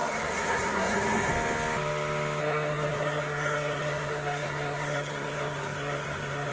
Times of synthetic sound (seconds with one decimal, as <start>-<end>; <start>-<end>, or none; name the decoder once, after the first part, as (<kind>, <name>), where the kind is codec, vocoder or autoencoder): 0.0-1.3 (codec, SNAC); 2.4-6.5